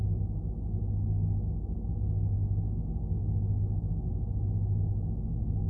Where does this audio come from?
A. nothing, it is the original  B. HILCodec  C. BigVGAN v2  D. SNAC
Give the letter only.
A